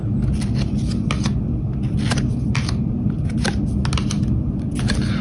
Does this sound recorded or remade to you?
recorded